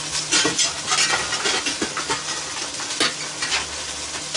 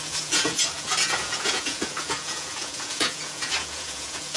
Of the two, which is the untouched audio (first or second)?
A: first